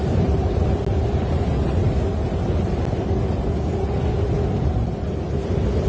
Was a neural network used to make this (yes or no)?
no